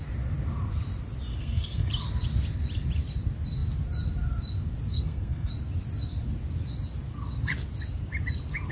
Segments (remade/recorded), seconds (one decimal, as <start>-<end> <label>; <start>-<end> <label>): 0.0-1.4 recorded; 1.4-1.9 remade; 1.9-4.9 recorded; 4.9-5.5 remade; 5.5-8.7 recorded